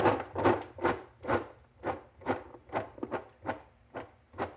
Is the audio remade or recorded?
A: recorded